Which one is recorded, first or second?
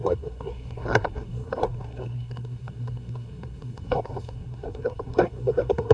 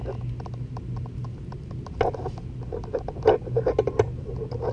second